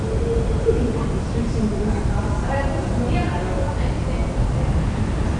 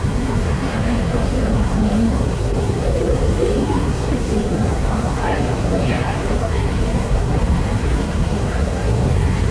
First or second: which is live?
first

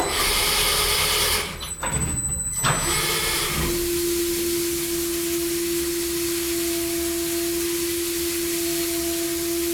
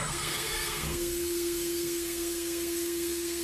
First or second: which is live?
first